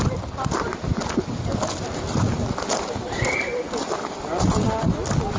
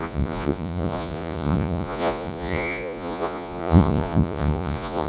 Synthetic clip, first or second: second